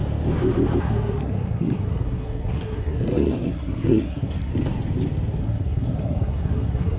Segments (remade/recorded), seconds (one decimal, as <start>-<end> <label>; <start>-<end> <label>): 0.0-0.8 recorded; 0.8-4.5 remade; 4.5-5.4 recorded; 5.4-7.0 remade